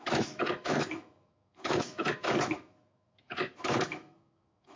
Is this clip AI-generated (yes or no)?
yes